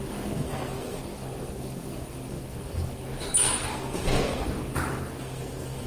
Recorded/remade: remade